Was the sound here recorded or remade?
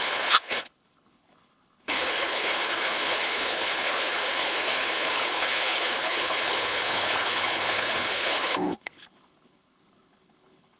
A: remade